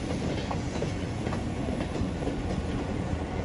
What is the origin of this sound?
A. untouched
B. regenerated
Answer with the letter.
B